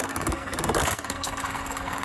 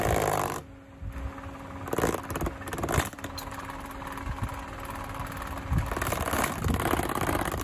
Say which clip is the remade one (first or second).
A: first